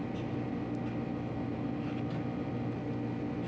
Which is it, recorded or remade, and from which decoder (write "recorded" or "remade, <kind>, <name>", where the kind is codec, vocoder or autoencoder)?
recorded